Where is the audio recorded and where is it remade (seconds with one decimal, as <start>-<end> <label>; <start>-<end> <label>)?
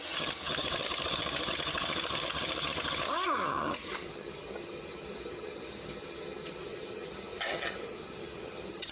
0.0-8.9 remade